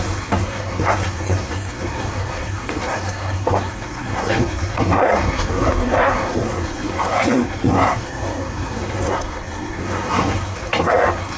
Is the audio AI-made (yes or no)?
yes